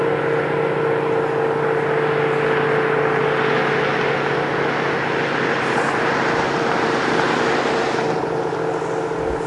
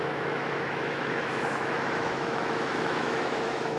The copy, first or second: second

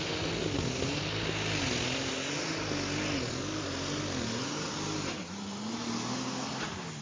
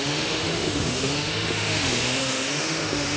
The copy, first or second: second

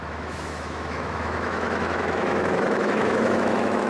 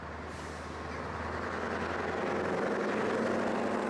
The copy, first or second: first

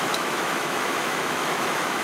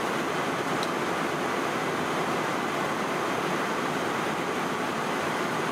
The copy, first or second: first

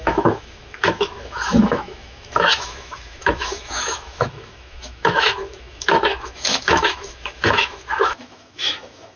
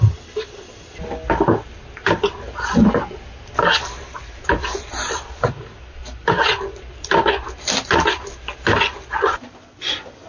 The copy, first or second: first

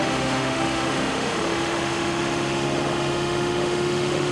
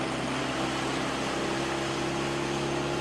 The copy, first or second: first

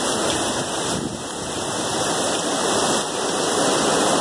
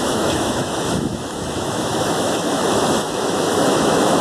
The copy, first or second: second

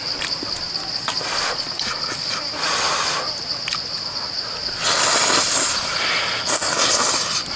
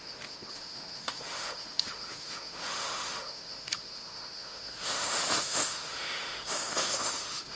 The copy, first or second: second